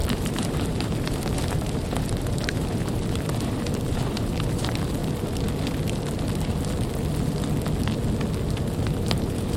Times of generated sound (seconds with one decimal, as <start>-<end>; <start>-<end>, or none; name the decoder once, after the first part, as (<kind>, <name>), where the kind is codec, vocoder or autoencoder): 0.0-5.0 (vocoder, BigVGAN v2); 8.8-9.6